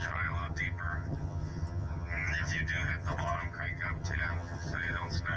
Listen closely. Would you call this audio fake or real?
fake